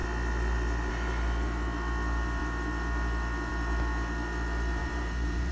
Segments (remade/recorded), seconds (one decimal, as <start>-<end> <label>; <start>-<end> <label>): 0.0-4.8 recorded; 4.8-5.5 remade